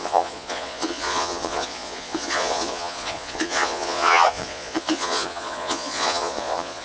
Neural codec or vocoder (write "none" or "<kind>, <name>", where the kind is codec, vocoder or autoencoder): vocoder, Vocos